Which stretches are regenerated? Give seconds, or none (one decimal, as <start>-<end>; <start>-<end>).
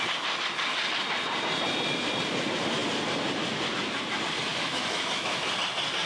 4.5-5.5